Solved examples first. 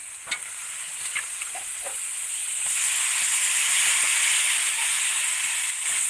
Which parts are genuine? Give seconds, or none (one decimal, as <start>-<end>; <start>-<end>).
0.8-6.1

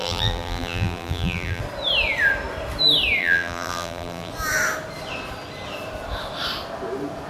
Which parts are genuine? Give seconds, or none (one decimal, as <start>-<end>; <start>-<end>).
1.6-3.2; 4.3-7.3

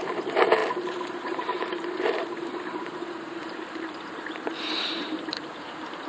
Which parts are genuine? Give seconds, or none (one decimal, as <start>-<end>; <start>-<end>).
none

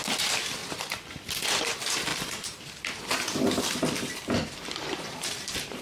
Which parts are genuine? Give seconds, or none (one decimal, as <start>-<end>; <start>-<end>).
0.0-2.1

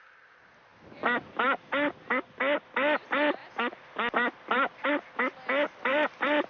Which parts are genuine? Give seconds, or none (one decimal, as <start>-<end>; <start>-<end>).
0.0-3.4; 4.9-5.9

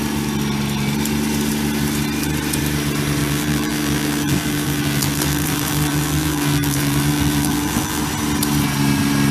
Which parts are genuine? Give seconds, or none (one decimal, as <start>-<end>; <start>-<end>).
0.0-3.2; 8.0-9.3

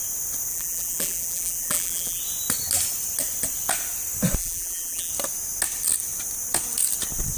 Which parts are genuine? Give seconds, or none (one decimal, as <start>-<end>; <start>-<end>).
0.0-0.5; 2.2-4.4; 5.1-7.4